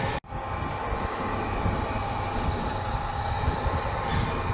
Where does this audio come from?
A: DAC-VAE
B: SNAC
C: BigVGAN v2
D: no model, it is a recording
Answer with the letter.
D